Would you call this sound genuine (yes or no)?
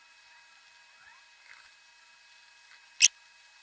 yes